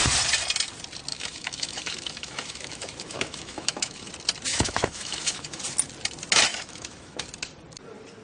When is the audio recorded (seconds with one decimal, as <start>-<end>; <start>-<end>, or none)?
0.0-1.1; 4.1-4.5; 5.6-6.5; 7.2-8.2